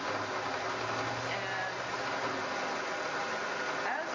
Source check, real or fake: real